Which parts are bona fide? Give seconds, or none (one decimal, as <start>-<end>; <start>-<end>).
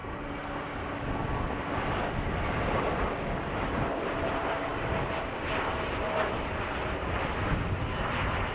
0.0-8.5